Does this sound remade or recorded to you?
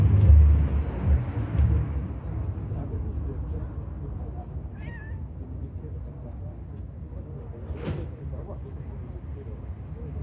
recorded